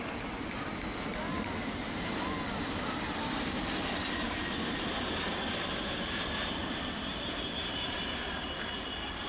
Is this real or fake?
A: fake